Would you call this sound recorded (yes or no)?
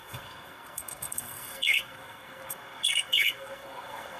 no